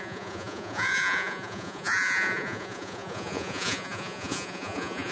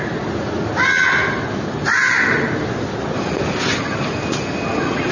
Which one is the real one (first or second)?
second